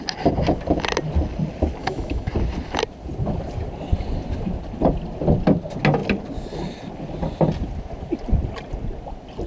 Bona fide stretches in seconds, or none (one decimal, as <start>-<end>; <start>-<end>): 0.0-1.8; 2.3-9.5

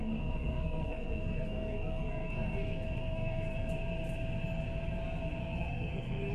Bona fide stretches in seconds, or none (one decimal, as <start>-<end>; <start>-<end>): 3.7-5.4